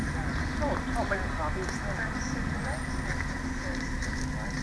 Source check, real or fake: real